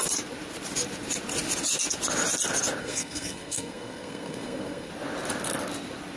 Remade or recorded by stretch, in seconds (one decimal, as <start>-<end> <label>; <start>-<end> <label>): 0.0-2.8 recorded; 2.8-4.9 remade; 4.9-6.2 recorded